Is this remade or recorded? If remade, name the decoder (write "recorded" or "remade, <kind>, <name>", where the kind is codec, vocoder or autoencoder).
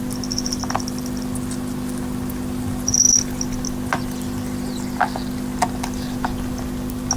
recorded